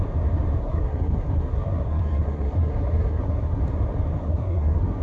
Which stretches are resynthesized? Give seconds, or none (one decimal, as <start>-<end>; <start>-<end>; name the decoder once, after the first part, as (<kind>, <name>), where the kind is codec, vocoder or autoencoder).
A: 0.6-3.6 (codec, SNAC); 4.2-5.0